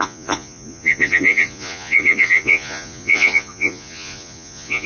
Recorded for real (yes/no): no